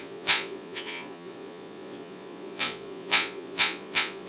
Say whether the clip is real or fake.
fake